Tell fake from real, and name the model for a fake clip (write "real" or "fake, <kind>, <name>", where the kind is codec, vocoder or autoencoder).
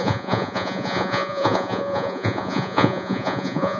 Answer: fake, vocoder, Vocos